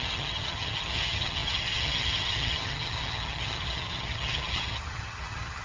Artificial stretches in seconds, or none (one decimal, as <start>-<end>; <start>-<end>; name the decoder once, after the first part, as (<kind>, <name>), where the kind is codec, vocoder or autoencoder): 0.0-5.6 (vocoder, HiFi-GAN)